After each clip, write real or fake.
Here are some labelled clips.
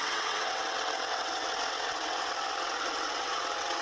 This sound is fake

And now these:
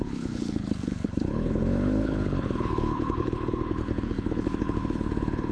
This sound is fake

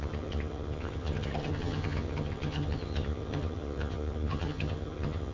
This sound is fake